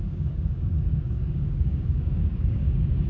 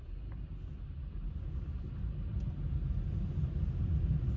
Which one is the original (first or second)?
second